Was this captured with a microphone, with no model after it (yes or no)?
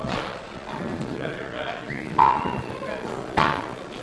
no